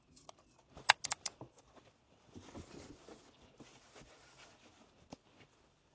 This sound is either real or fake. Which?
fake